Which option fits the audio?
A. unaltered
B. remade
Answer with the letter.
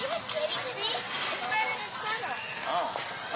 A